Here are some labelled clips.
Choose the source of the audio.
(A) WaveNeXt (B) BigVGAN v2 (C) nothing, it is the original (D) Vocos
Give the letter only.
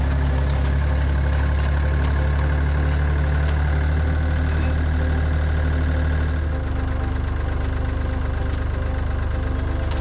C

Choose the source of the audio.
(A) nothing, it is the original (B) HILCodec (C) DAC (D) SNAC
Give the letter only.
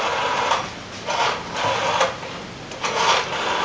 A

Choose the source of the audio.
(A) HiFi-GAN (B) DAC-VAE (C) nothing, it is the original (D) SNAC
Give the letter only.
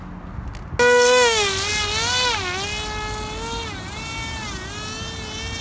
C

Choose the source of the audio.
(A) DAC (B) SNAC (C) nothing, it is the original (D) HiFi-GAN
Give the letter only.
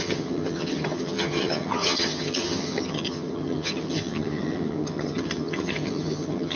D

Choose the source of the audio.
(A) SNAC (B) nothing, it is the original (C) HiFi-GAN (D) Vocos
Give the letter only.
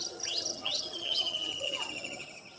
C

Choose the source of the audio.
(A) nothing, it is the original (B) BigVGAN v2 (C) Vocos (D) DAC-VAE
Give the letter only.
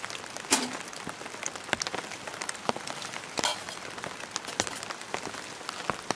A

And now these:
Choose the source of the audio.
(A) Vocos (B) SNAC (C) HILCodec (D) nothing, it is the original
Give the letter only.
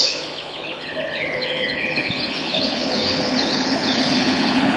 C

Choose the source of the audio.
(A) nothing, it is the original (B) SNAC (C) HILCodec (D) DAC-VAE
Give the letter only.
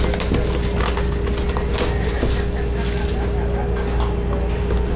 A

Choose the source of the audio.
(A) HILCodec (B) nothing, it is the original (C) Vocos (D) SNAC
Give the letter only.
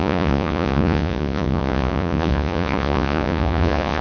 C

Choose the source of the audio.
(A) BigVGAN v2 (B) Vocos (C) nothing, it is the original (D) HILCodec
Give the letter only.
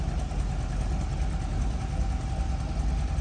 C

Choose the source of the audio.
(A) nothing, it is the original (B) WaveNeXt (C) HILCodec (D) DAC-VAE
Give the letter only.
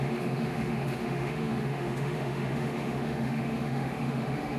D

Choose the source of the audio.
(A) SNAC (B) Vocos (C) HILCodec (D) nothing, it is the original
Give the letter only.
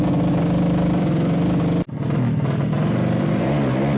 D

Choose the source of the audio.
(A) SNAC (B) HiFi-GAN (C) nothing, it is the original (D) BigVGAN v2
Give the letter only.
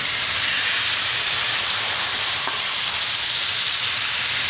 D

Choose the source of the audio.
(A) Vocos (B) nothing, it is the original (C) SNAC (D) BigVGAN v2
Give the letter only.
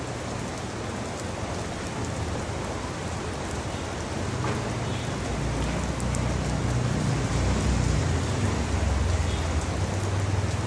B